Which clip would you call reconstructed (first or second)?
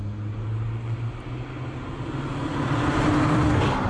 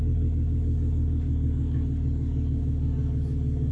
second